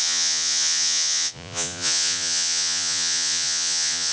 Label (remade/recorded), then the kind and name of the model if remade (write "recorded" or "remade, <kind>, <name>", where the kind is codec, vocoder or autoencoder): remade, vocoder, Vocos